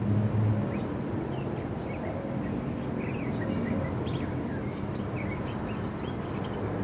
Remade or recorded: recorded